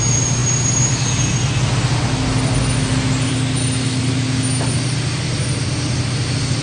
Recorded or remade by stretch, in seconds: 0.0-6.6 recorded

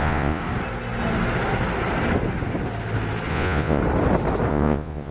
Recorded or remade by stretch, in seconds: 0.0-0.4 remade; 0.4-3.3 recorded; 3.3-3.8 remade; 3.8-4.5 recorded; 4.5-5.1 remade

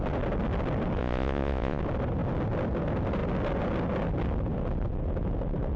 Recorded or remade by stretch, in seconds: 0.0-1.0 recorded; 1.0-1.8 remade; 1.8-5.8 recorded

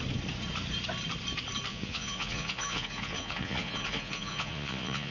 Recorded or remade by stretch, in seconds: 0.0-1.7 recorded; 1.7-5.1 remade

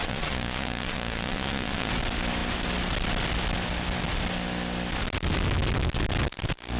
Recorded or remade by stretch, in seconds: 0.0-1.9 remade; 1.9-6.8 recorded

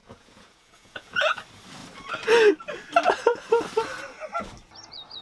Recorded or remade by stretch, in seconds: 0.0-1.4 remade; 1.4-5.2 recorded

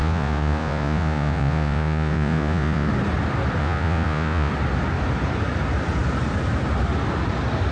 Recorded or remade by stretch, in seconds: 0.0-2.9 remade; 2.9-3.6 recorded; 3.6-4.5 remade; 4.5-7.7 recorded

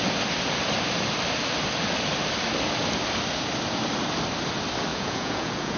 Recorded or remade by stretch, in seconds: 0.0-4.9 recorded; 4.9-5.8 remade